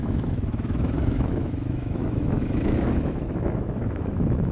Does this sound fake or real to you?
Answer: fake